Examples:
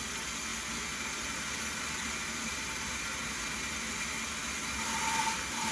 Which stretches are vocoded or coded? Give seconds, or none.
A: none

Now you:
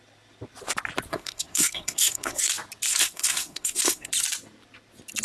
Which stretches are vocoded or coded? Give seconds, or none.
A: 1.1-2.5 (codec, SNAC); 2.9-4.1

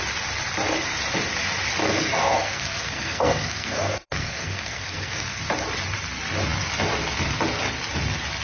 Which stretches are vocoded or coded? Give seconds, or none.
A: 1.8-5.4 (codec, SNAC)

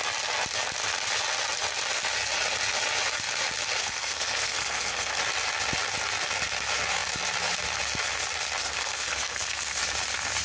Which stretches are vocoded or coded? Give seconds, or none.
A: 3.8-5.2 (codec, SNAC); 8.6-9.8

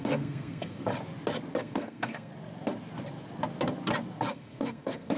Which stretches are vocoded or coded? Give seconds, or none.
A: 0.0-0.9 (codec, SNAC); 1.6-2.3; 4.3-5.2

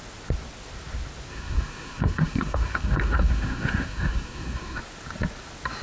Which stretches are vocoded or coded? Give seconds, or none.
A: 1.3-4.8 (codec, SNAC)

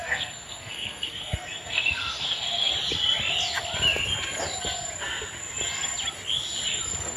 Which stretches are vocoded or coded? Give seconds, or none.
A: 0.0-2.7 (codec, SNAC)